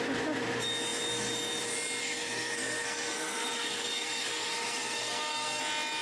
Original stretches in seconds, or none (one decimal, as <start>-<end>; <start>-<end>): 0.0-2.0; 5.6-6.0